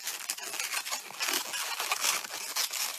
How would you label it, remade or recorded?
recorded